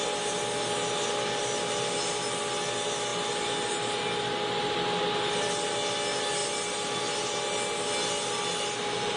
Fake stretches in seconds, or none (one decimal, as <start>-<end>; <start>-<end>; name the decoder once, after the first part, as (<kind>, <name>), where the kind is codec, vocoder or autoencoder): none